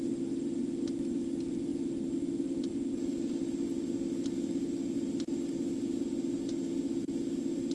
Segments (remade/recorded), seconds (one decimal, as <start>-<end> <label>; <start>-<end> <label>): 0.0-7.7 recorded